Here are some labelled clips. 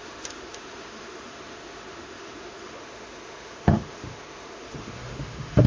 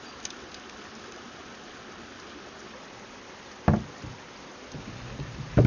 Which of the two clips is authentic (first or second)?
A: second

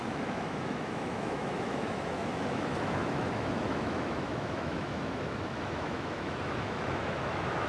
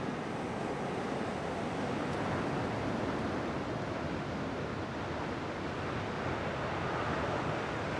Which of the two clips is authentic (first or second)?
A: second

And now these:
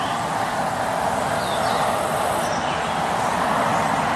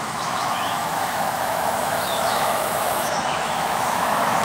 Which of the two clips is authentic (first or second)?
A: first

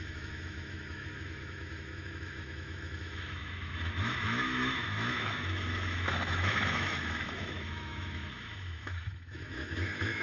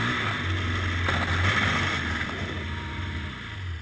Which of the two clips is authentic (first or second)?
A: second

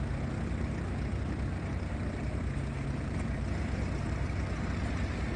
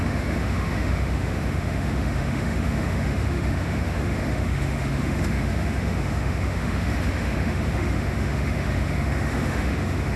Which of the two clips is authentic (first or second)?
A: first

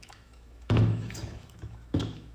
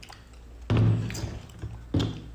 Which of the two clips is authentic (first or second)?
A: second